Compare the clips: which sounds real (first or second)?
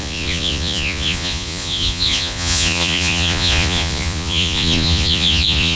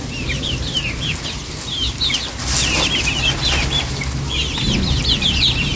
second